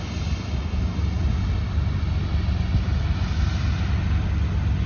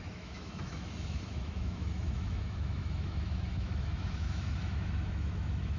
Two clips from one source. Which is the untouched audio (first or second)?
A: first